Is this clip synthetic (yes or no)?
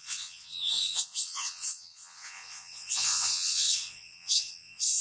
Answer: yes